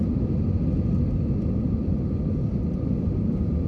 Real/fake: real